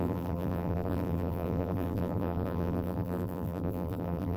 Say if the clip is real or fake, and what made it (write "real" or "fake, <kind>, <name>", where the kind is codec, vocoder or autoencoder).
fake, vocoder, BigVGAN v2